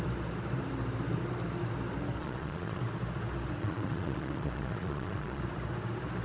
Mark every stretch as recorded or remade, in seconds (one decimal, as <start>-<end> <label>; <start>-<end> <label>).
0.0-2.2 recorded; 2.2-2.8 remade; 2.8-3.6 recorded; 3.6-5.4 remade; 5.4-6.2 recorded